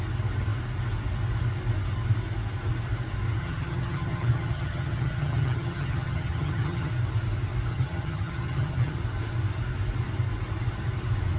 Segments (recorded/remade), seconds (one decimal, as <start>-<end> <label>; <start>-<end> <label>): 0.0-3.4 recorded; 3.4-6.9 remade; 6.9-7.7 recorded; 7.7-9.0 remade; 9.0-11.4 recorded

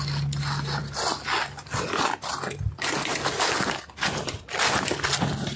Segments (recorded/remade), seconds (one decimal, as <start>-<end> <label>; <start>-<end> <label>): 0.0-0.8 recorded; 0.8-1.8 remade; 1.8-5.6 recorded

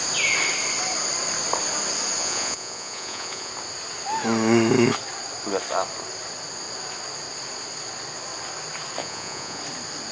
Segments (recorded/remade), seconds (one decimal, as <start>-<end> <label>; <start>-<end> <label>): 0.0-2.2 recorded; 2.2-3.5 remade; 3.5-9.0 recorded; 9.0-9.6 remade; 9.6-10.1 recorded

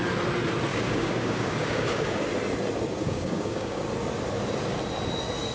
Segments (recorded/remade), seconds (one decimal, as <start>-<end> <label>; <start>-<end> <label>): 0.0-0.7 recorded; 0.7-2.2 remade; 2.2-3.0 recorded; 3.0-3.8 remade; 3.8-5.5 recorded

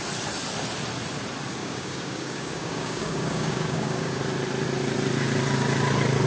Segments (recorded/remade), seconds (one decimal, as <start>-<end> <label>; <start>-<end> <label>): 0.0-1.6 recorded; 1.6-4.2 remade; 4.2-6.3 recorded

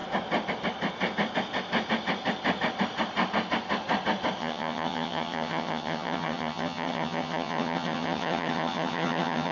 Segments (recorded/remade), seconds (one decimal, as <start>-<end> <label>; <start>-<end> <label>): 0.0-4.4 recorded; 4.4-9.5 remade